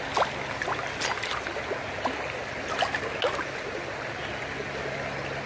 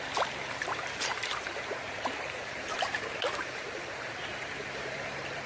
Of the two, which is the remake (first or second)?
second